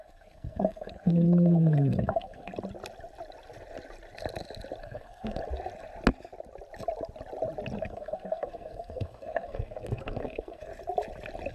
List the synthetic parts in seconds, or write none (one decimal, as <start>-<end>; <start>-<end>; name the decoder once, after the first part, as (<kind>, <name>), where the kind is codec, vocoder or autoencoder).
0.0-2.5 (codec, SNAC); 4.8-5.4; 7.8-10.7

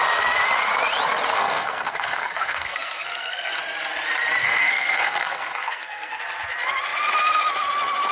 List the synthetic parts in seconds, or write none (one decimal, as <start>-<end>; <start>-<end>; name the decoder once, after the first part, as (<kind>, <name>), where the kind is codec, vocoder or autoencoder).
1.3-3.5 (codec, SNAC); 4.4-6.2